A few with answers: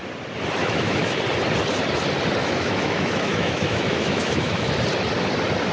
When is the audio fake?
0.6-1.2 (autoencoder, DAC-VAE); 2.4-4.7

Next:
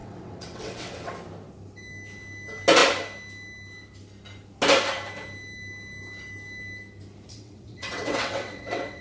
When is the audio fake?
0.0-1.1 (vocoder, WaveNeXt); 7.3-9.0

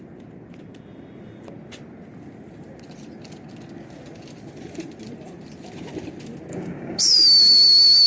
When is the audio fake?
6.5-7.0 (codec, DAC)

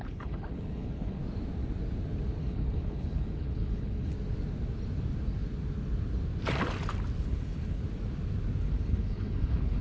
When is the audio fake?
0.0-1.2 (codec, HILCodec); 2.4-4.1; 7.2-7.8; 8.6-9.8

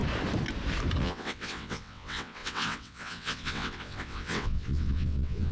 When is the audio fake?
1.0-5.5 (vocoder, WaveNeXt)